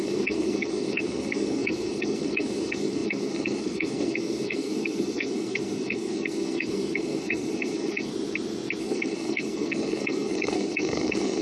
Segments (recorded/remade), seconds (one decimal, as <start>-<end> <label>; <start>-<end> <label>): 0.0-8.1 remade; 8.1-8.8 recorded; 8.8-11.4 remade

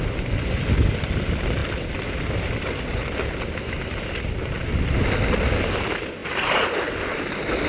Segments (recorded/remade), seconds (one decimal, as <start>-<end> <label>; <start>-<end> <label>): 0.0-7.7 recorded

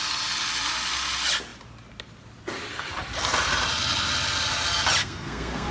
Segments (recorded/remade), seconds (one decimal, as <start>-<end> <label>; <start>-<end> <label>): 0.0-5.0 recorded; 5.0-5.7 remade